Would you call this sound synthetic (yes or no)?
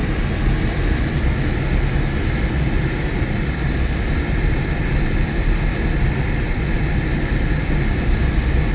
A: no